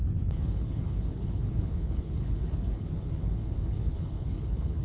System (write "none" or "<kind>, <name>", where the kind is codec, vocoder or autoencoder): codec, HILCodec